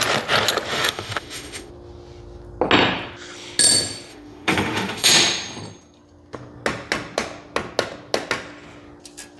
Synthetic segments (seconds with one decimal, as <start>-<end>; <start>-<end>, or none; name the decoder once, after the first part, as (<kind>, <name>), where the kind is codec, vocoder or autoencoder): 0.7-1.7 (autoencoder, DAC-VAE); 4.1-5.1